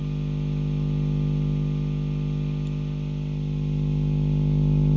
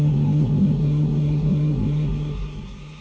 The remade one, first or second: second